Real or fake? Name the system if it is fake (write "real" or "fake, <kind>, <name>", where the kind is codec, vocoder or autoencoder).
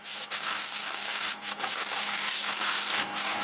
fake, codec, DAC